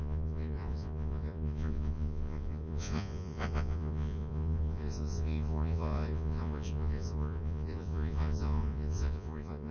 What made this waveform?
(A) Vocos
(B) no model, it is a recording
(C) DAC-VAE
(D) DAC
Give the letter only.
A